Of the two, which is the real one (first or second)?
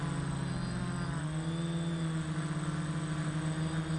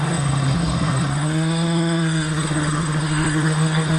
first